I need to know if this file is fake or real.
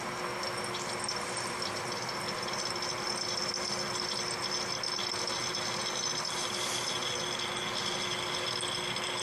real